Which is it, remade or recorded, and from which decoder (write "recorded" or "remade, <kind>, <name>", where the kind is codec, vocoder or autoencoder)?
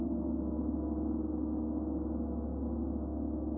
recorded